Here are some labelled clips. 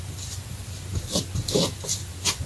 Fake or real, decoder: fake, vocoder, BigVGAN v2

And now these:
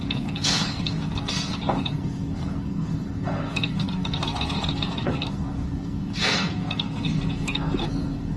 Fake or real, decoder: fake, codec, SNAC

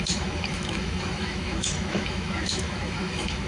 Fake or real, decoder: fake, autoencoder, DAC-VAE